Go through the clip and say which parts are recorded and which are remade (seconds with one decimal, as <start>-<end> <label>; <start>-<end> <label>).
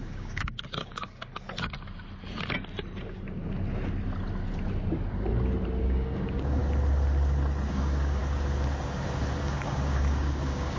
0.0-1.3 remade; 1.3-5.8 recorded; 5.8-6.6 remade; 6.6-7.7 recorded; 7.7-8.2 remade; 8.2-9.4 recorded; 9.4-10.8 remade